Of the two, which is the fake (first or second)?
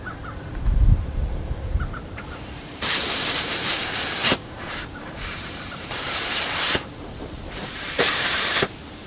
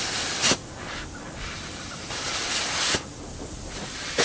first